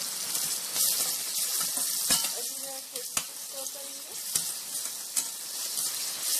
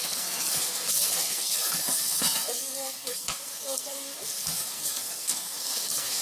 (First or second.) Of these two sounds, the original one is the first